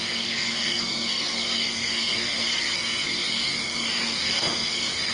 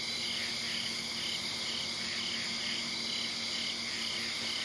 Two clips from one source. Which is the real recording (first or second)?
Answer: second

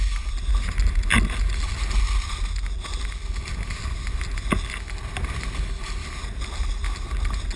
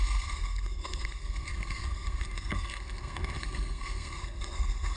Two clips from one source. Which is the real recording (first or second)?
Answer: first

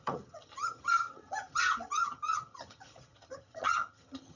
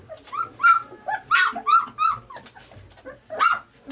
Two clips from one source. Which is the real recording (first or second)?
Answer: second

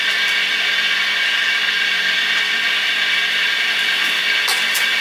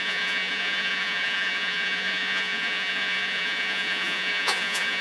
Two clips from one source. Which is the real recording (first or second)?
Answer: first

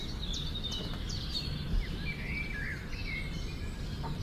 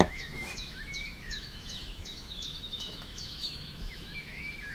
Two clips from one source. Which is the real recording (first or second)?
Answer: first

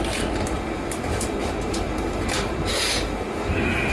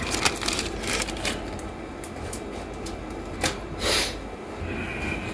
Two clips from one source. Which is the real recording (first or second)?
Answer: second